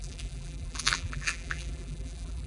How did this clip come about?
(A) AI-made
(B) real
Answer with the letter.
A